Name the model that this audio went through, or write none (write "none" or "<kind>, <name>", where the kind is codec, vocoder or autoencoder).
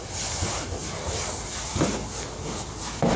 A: none